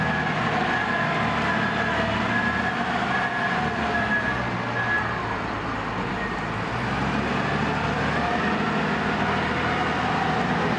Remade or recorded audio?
recorded